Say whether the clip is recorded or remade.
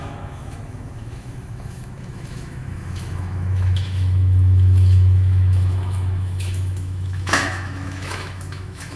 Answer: remade